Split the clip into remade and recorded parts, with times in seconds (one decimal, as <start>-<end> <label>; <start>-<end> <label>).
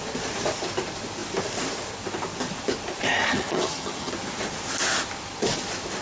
0.0-3.3 recorded; 3.3-4.1 remade; 4.1-6.0 recorded